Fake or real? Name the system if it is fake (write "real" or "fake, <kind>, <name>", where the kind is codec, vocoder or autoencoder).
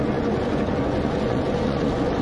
fake, vocoder, Vocos